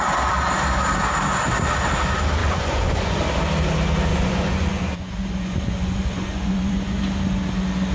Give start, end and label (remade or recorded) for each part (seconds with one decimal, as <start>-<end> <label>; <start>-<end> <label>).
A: 0.0-2.4 recorded; 2.4-3.2 remade; 3.2-4.1 recorded; 4.1-7.0 remade; 7.0-7.9 recorded